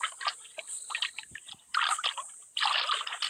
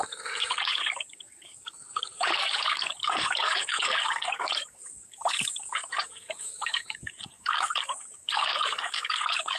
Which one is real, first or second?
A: first